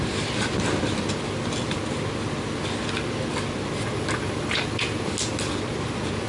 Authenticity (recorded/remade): recorded